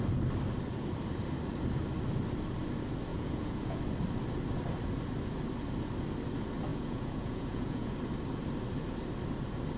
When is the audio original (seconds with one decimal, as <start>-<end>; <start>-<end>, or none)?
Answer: 0.0-3.1; 3.8-6.7; 7.9-9.8